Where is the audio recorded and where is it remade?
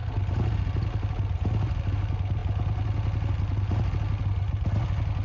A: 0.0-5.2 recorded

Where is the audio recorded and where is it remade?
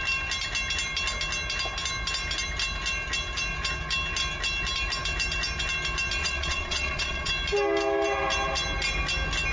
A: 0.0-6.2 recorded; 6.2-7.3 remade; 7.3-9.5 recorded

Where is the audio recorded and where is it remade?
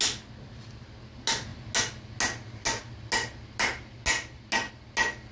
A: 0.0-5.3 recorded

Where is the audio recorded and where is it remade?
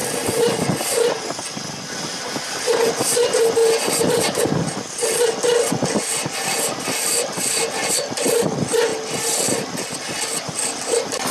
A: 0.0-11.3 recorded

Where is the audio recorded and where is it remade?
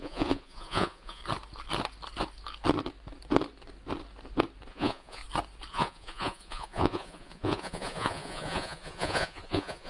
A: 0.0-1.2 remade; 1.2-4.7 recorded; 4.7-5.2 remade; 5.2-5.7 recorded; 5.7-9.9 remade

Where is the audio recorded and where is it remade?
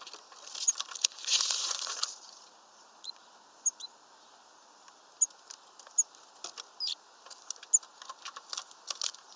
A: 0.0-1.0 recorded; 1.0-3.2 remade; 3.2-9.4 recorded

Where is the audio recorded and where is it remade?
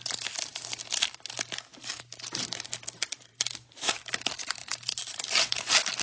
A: 0.0-6.0 recorded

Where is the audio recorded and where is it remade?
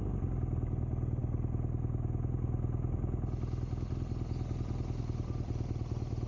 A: 0.0-6.3 recorded